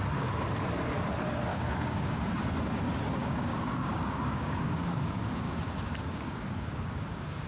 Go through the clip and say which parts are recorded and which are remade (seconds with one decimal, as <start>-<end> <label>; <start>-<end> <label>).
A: 0.0-1.5 recorded; 1.5-2.2 remade; 2.2-3.2 recorded; 3.2-7.5 remade